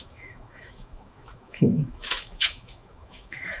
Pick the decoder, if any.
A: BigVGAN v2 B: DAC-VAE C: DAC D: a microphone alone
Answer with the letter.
B